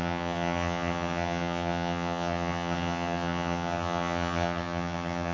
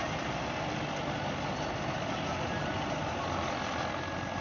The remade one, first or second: first